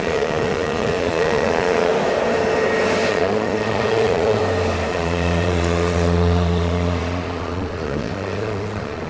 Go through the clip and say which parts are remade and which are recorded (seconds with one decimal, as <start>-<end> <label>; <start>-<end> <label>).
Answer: 0.0-1.9 remade; 1.9-3.1 recorded; 3.1-4.4 remade; 4.4-4.9 recorded; 4.9-9.1 remade